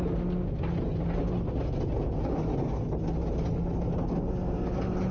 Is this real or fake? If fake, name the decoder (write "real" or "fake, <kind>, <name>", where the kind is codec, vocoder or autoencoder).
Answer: real